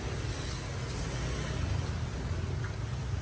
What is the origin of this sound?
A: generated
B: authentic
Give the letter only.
B